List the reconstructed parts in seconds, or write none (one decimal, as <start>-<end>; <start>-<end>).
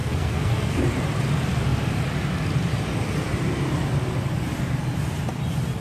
0.0-0.8